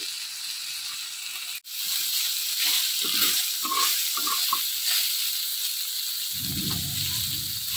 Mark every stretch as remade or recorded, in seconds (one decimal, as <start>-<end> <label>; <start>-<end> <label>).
0.0-7.8 recorded